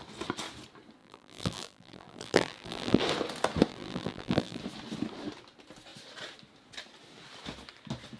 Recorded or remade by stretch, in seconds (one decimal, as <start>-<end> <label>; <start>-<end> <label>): 0.0-1.0 recorded; 1.0-3.0 remade; 3.0-3.7 recorded; 3.7-4.6 remade; 4.6-8.2 recorded